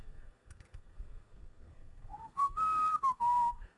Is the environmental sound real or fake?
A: fake